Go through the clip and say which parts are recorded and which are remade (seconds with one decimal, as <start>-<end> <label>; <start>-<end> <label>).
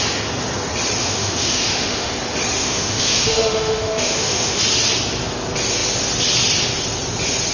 0.0-1.0 recorded; 1.0-2.1 remade; 2.1-2.6 recorded; 2.6-4.6 remade; 4.6-7.5 recorded